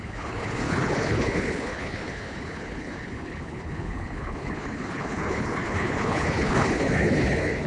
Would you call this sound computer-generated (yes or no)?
yes